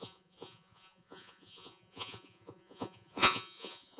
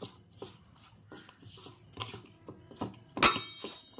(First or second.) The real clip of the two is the second